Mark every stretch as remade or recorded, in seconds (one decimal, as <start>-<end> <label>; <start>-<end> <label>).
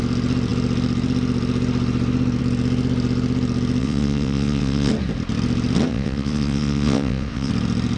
0.0-3.8 recorded; 3.8-4.9 remade; 4.9-5.9 recorded; 5.9-7.5 remade; 7.5-8.0 recorded